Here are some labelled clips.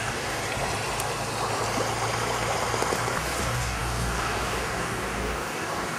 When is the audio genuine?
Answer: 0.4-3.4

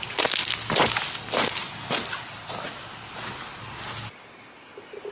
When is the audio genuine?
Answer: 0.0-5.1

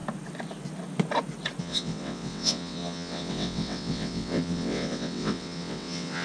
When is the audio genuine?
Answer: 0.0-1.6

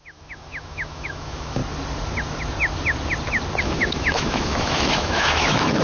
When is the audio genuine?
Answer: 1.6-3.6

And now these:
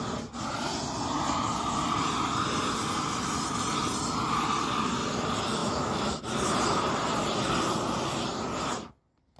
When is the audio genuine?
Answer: 0.0-5.6; 6.2-9.4

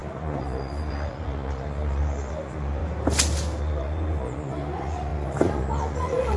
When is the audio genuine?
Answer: 2.8-3.6